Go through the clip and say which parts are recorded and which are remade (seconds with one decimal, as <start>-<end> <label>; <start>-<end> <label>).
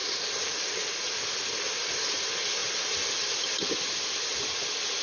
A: 0.0-0.5 remade; 0.5-2.6 recorded; 2.6-3.1 remade; 3.1-5.0 recorded